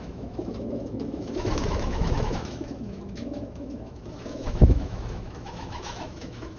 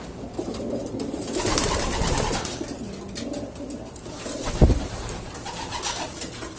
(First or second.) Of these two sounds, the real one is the second